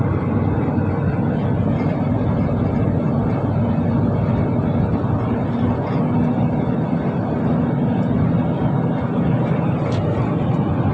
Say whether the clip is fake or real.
real